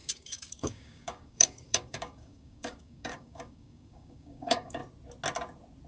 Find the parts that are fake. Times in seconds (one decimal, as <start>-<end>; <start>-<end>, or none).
0.0-4.8